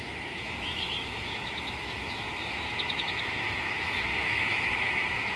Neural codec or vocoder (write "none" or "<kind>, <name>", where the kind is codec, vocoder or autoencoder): autoencoder, DAC-VAE